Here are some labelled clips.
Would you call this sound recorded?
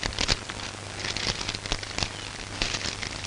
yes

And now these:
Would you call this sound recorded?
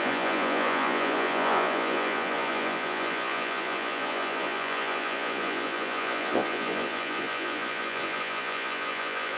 no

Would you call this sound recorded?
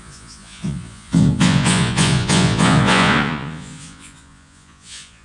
no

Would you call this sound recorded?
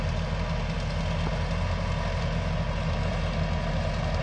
yes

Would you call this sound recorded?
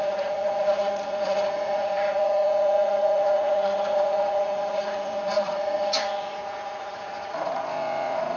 no